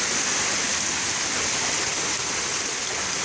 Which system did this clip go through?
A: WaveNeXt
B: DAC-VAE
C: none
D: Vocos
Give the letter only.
C